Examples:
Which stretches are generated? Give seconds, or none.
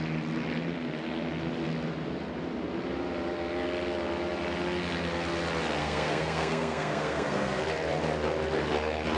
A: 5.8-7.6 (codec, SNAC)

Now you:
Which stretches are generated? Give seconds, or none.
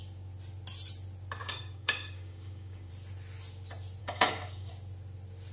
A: 1.4-2.9 (codec, DAC); 4.0-4.7